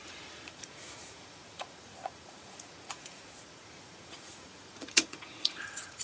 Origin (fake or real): fake